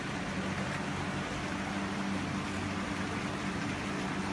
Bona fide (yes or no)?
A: yes